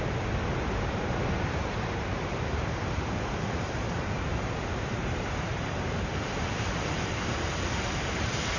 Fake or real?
fake